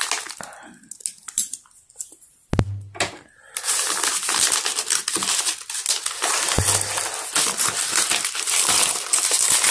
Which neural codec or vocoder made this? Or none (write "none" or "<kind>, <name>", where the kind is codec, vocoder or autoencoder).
none